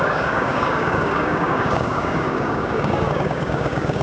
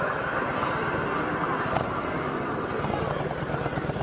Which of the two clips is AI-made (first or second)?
first